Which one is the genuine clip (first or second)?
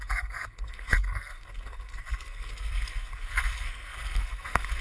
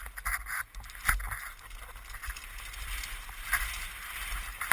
second